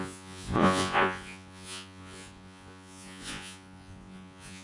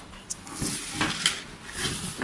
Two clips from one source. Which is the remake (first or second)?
first